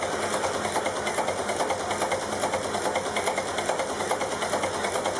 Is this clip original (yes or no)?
yes